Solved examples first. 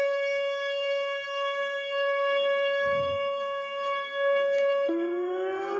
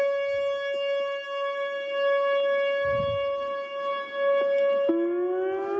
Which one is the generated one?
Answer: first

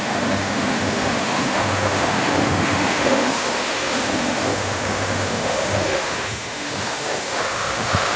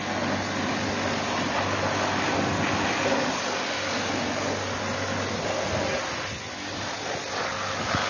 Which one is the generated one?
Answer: first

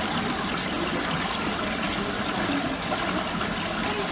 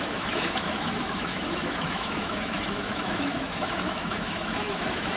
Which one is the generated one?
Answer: second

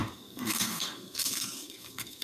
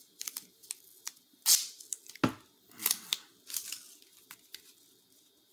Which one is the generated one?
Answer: first